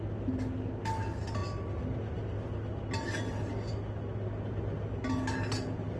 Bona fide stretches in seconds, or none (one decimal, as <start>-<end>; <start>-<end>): 0.0-6.0